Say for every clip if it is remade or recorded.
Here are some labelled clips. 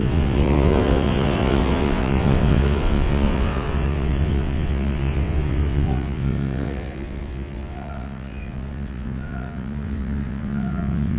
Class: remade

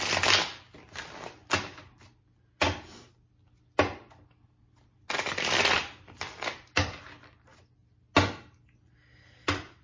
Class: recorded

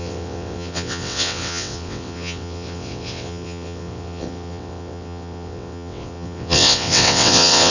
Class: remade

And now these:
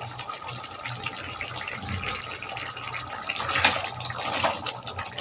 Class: recorded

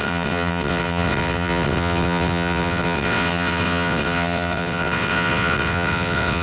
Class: remade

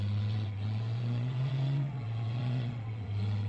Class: remade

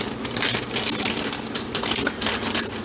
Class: recorded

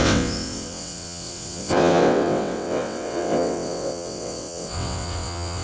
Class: remade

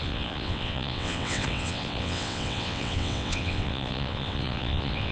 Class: remade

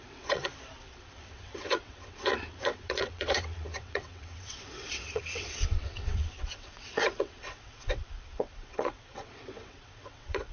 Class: remade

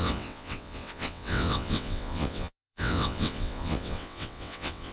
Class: remade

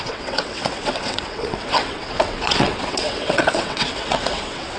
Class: remade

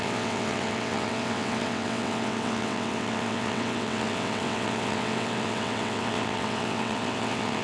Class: remade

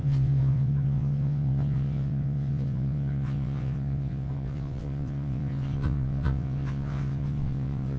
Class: remade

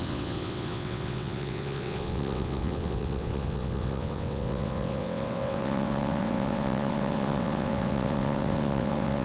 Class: remade